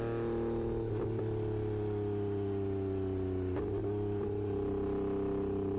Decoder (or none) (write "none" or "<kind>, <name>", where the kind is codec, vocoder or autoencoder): none